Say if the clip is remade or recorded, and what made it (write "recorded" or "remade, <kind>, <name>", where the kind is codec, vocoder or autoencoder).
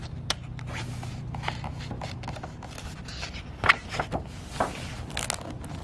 recorded